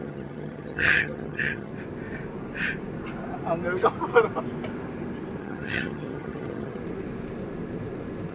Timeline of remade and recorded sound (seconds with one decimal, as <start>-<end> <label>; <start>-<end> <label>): 0.0-1.7 remade; 1.7-5.4 recorded; 5.4-6.8 remade; 6.8-8.3 recorded